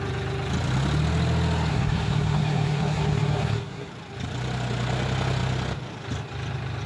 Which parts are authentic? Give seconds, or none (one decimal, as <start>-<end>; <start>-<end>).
0.0-1.7; 3.9-6.9

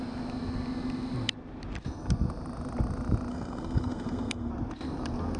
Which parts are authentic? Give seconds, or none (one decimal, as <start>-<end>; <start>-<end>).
0.0-3.3; 4.5-5.4

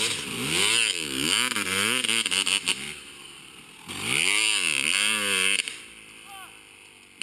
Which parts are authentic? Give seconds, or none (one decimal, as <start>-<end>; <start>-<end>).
0.0-7.2